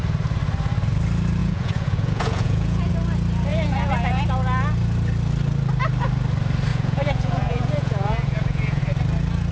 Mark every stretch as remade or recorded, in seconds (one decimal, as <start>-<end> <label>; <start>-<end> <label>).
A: 0.0-1.4 recorded; 1.4-2.9 remade; 2.9-3.5 recorded; 3.5-4.2 remade; 4.2-6.7 recorded; 6.7-8.8 remade; 8.8-9.5 recorded